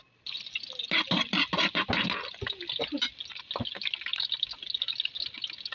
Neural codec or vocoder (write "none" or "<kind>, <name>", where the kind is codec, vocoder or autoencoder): none